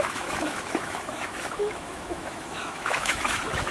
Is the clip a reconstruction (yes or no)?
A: yes